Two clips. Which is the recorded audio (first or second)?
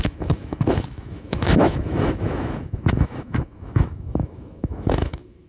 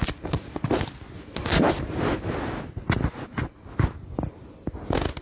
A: second